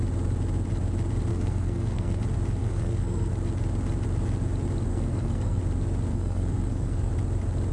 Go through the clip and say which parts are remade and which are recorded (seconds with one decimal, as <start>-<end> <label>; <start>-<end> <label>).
0.0-1.3 recorded; 1.3-2.2 remade; 2.2-2.6 recorded; 2.6-3.3 remade; 3.3-4.9 recorded; 4.9-5.6 remade; 5.6-6.1 recorded; 6.1-7.1 remade; 7.1-7.7 recorded